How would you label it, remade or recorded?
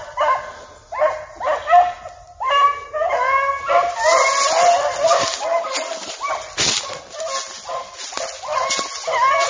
recorded